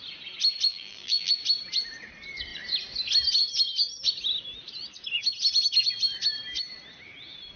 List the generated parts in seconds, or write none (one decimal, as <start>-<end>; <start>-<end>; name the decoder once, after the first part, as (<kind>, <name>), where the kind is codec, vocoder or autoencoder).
0.7-1.3 (vocoder, BigVGAN v2)